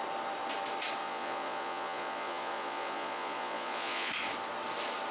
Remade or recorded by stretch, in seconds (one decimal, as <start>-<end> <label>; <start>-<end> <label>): 0.0-1.0 recorded; 1.0-4.1 remade; 4.1-5.1 recorded